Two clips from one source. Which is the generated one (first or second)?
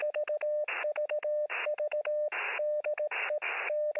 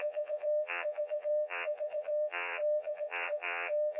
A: second